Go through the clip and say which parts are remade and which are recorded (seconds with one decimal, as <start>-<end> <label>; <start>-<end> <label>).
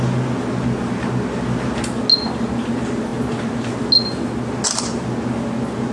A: 0.0-5.9 recorded